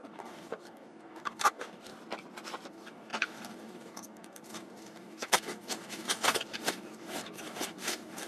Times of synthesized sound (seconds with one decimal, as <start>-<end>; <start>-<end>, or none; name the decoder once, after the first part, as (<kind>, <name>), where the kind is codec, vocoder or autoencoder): 0.0-1.9 (codec, DAC); 2.7-8.3